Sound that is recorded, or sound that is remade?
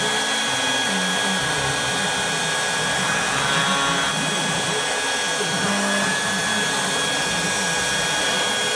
recorded